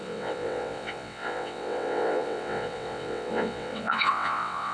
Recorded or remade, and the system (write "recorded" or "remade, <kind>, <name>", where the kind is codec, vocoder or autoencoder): remade, vocoder, WaveNeXt